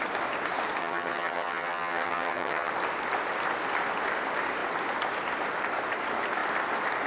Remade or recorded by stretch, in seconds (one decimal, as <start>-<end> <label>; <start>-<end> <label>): 0.0-0.8 recorded; 0.8-2.7 remade; 2.7-7.1 recorded